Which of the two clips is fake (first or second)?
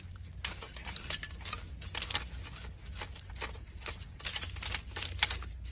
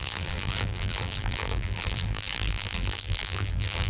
second